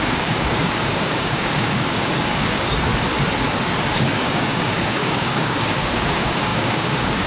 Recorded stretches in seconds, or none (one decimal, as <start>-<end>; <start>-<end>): 2.9-4.0